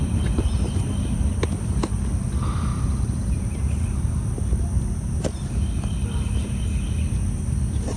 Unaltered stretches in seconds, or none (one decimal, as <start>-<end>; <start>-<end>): 0.0-8.0